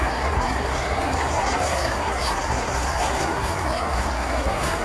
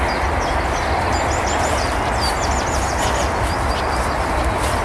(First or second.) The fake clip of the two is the first